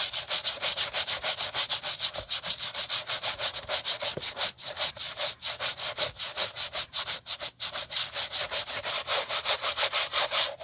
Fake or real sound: fake